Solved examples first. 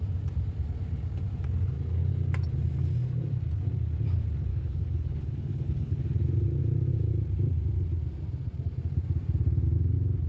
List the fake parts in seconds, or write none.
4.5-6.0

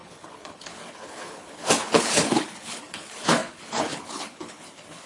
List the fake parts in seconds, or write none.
0.0-5.1